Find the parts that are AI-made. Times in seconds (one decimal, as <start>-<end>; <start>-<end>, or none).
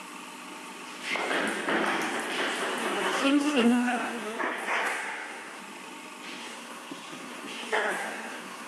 2.8-5.6; 6.4-8.7